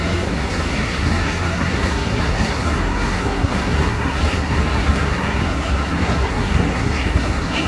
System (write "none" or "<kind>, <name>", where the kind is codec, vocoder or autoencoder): codec, SNAC